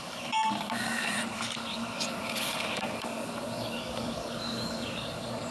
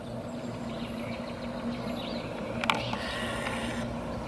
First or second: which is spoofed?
first